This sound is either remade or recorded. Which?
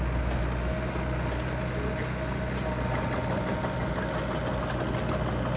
recorded